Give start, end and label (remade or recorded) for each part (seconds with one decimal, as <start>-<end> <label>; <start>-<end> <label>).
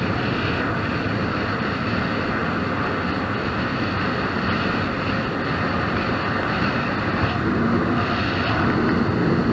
0.0-9.5 recorded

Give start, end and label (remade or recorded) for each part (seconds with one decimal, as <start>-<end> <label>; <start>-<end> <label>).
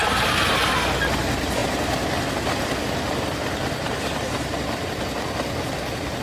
0.0-1.6 recorded; 1.6-2.8 remade; 2.8-3.8 recorded; 3.8-5.0 remade; 5.0-6.2 recorded